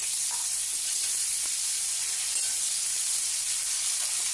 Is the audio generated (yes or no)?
no